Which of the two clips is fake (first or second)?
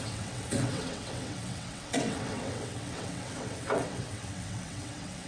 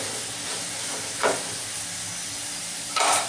first